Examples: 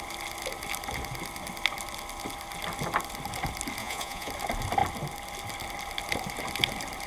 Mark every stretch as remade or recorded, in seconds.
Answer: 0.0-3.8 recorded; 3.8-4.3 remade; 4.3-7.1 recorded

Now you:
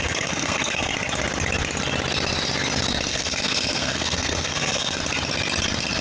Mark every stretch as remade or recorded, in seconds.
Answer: 0.0-0.9 remade; 0.9-3.1 recorded; 3.1-5.0 remade; 5.0-6.0 recorded

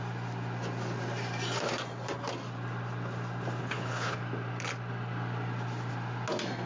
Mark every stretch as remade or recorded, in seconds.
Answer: 0.0-3.6 recorded; 3.6-4.2 remade; 4.2-6.7 recorded

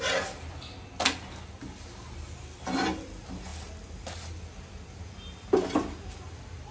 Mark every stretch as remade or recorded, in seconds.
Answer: 0.0-6.7 recorded

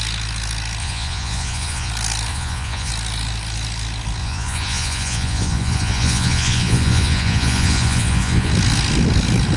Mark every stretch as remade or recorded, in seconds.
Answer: 0.0-0.8 recorded; 0.8-1.9 remade; 1.9-2.3 recorded; 2.3-2.9 remade; 2.9-4.2 recorded; 4.2-8.5 remade; 8.5-9.6 recorded

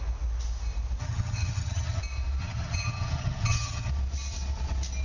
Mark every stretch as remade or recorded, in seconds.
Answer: 0.0-1.0 recorded; 1.0-2.0 remade; 2.0-2.4 recorded; 2.4-3.9 remade; 3.9-5.0 recorded

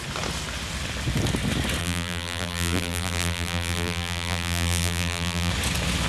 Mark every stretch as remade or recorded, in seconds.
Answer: 0.0-1.8 recorded; 1.8-5.5 remade; 5.5-6.1 recorded

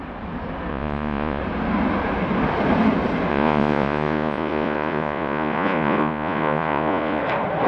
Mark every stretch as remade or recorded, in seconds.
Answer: 0.0-0.7 recorded; 0.7-1.4 remade; 1.4-3.3 recorded; 3.3-7.2 remade; 7.2-7.7 recorded